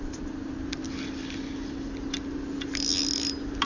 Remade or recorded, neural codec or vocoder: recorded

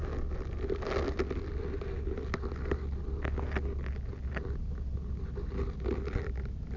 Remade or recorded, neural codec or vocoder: recorded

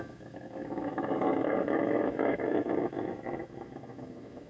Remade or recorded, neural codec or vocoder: remade, autoencoder, DAC-VAE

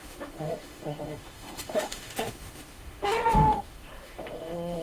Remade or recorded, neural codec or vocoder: remade, autoencoder, DAC-VAE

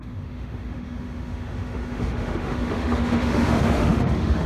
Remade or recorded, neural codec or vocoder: remade, autoencoder, DAC-VAE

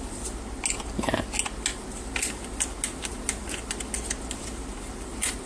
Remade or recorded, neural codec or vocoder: recorded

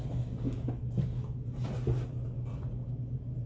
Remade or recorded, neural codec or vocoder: recorded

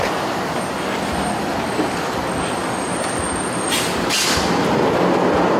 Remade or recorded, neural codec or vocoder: recorded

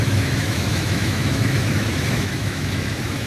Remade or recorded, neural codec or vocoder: remade, autoencoder, DAC-VAE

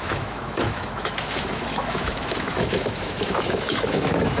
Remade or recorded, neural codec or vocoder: remade, autoencoder, DAC-VAE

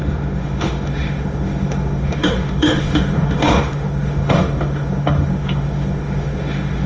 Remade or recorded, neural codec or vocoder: remade, autoencoder, DAC-VAE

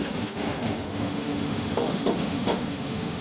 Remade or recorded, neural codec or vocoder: remade, autoencoder, DAC-VAE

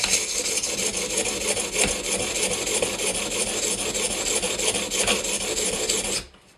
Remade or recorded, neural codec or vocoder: recorded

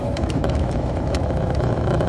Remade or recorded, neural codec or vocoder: remade, autoencoder, DAC-VAE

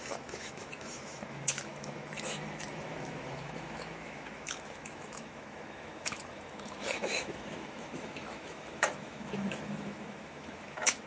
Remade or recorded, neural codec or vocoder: remade, autoencoder, DAC-VAE